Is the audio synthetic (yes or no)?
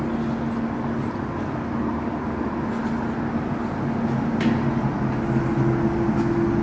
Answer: no